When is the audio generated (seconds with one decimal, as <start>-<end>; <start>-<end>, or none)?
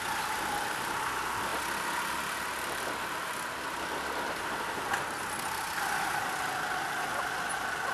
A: none